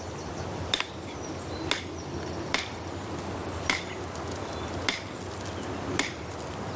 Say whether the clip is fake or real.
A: real